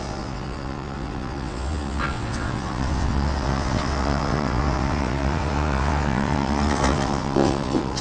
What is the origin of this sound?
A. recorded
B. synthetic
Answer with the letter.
B